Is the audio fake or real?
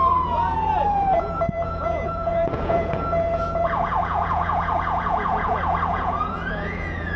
fake